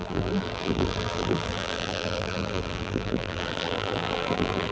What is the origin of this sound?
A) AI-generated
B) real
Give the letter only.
A